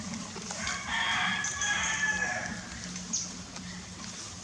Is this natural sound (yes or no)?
yes